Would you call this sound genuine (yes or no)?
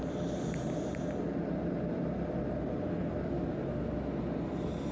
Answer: yes